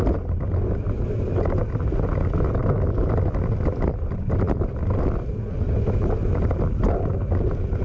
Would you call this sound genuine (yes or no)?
yes